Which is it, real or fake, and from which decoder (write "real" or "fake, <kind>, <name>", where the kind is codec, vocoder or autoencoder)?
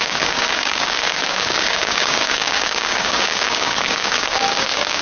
fake, codec, DAC